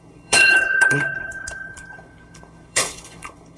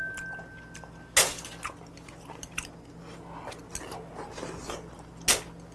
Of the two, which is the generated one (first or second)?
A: first